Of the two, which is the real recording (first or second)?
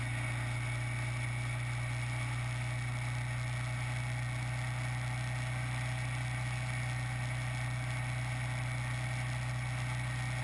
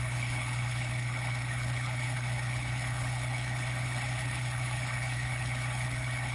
first